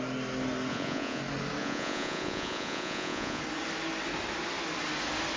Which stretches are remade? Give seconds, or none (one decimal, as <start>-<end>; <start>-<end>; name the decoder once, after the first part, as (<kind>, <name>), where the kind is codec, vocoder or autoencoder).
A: 0.7-1.2 (vocoder, Vocos); 1.6-3.4